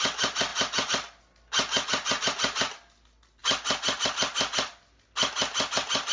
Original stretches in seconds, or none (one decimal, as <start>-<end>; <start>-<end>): 0.0-6.1